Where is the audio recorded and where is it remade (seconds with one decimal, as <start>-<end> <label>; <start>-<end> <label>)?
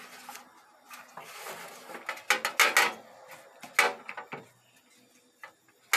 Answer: 0.0-6.0 recorded